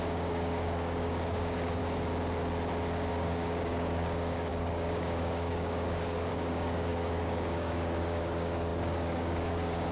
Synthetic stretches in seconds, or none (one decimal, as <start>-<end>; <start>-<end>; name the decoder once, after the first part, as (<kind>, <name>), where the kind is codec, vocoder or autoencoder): 0.0-1.8 (codec, DAC); 3.1-9.9

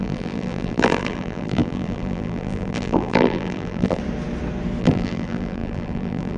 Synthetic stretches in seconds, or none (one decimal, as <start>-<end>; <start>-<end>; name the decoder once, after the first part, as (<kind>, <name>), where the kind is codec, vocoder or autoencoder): 0.0-4.0 (vocoder, BigVGAN v2); 4.8-6.4

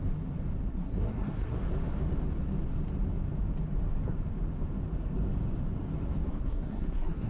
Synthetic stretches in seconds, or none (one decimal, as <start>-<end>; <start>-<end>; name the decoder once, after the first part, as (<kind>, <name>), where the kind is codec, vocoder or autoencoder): 0.7-1.6 (codec, SNAC); 6.3-7.3

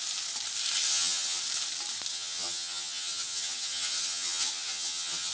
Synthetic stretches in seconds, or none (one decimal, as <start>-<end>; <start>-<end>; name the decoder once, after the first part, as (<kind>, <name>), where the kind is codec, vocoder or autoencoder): 0.9-1.4 (vocoder, HiFi-GAN); 2.1-5.3

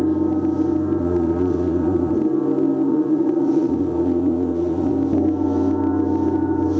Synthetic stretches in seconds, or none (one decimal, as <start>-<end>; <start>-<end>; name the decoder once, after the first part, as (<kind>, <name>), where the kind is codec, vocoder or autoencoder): 1.0-2.1 (vocoder, Vocos); 2.9-4.9

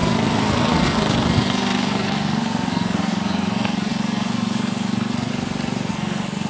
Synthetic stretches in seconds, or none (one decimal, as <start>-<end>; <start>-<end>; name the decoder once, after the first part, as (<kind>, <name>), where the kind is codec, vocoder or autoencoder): 0.0-5.3 (codec, SNAC); 5.9-6.5